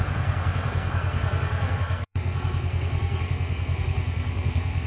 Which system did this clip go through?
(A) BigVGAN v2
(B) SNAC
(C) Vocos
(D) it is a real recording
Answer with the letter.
B